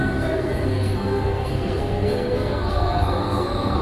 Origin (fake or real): fake